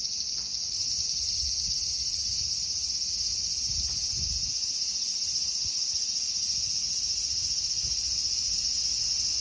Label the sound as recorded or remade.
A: recorded